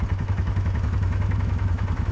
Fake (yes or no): yes